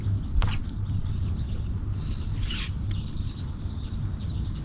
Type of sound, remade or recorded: recorded